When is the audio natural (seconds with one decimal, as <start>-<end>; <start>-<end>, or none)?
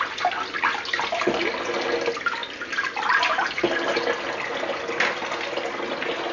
0.0-6.3